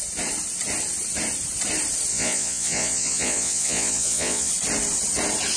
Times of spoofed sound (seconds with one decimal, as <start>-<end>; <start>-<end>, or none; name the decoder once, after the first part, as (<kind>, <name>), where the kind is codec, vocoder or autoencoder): 2.1-4.5 (vocoder, Vocos)